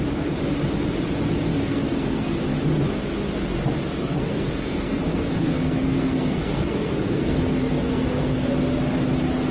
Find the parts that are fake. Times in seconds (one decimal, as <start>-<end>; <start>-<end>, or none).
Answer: 1.5-2.4; 4.0-8.5

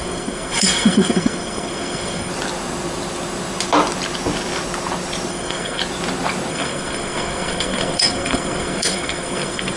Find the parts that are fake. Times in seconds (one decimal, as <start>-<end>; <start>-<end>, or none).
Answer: 0.0-2.3; 5.3-5.8; 6.5-9.8

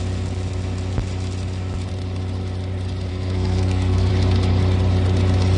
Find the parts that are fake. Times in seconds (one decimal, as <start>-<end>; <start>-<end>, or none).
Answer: 3.1-4.1

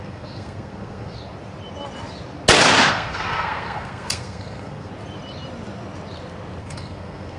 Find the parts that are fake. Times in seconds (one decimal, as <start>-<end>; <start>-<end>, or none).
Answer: 0.0-1.2; 2.9-4.9; 6.6-7.4

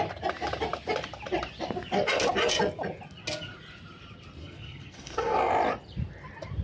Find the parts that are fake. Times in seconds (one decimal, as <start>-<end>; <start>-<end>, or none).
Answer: 4.4-5.5

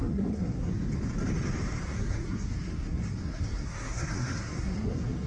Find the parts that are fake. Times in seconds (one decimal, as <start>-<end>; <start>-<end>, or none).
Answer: 0.0-0.7; 1.8-5.3

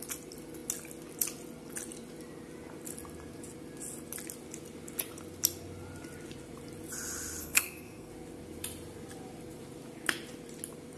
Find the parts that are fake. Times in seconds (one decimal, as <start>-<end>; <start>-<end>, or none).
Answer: 7.4-8.1

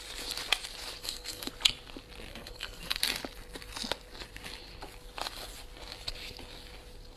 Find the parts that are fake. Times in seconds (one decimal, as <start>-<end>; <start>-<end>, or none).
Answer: 1.0-1.5; 2.3-3.0